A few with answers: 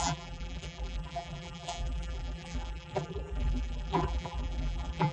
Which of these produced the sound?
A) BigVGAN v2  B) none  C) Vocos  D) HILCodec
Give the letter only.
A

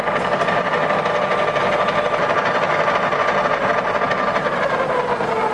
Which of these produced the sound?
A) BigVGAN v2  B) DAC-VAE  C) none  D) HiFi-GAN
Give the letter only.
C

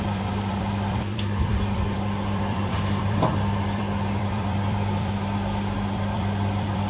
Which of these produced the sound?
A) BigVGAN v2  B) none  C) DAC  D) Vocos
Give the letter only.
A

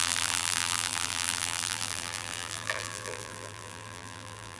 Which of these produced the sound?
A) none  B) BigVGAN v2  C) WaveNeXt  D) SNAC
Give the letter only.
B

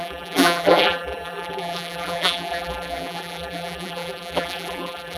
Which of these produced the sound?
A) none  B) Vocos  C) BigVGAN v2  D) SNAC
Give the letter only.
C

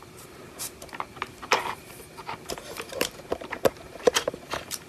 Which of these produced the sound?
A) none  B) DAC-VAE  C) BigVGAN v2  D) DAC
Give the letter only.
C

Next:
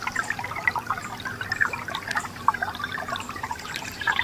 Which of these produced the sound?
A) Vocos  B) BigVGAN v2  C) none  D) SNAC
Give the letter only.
C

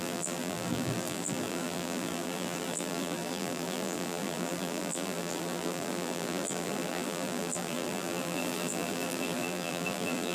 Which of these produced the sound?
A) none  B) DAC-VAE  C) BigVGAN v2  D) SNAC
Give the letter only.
C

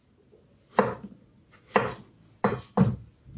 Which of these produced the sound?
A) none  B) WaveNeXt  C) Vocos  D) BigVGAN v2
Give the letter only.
A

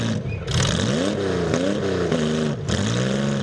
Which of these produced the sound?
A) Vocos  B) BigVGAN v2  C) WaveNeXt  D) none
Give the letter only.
D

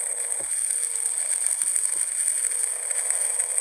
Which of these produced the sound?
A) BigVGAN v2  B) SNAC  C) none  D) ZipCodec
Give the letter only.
C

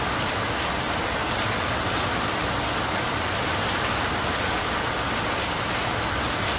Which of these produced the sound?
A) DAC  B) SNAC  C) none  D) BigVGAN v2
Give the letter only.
C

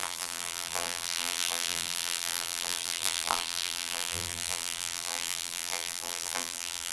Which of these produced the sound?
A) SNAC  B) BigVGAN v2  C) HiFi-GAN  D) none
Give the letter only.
B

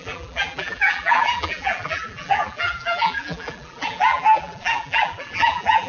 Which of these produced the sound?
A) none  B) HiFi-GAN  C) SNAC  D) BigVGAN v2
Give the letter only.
D